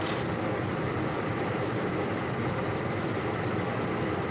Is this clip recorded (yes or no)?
yes